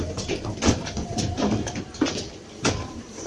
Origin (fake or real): fake